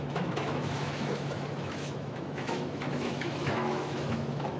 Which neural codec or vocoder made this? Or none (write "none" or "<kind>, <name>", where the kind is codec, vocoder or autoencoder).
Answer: autoencoder, DAC-VAE